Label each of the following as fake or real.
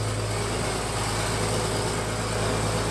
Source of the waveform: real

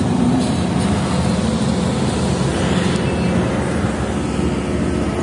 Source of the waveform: real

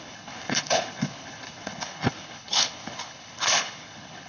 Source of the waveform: fake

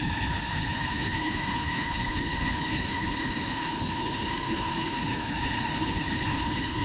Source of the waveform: fake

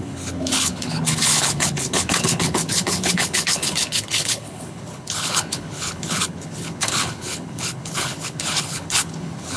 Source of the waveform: fake